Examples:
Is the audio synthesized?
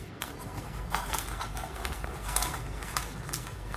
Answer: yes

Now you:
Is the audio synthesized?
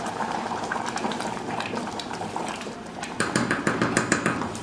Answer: yes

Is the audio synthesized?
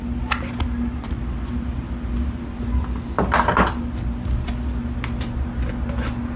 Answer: no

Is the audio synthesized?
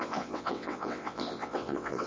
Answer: yes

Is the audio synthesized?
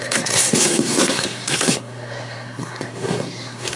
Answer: yes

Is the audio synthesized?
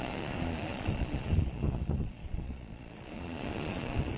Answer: yes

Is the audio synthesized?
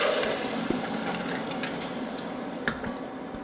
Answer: no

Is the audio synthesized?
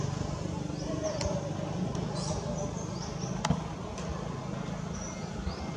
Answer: no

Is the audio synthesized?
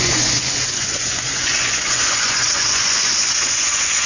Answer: yes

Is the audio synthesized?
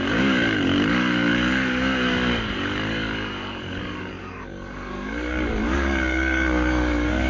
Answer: yes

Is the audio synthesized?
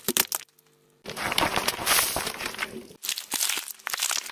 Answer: no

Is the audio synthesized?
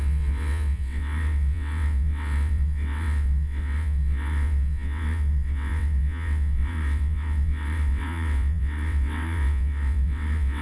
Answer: yes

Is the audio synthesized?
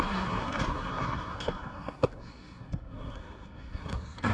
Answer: yes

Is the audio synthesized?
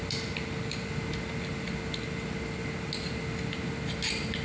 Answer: no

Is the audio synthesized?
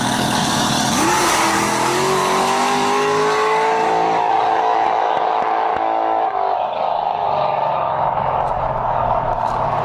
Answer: yes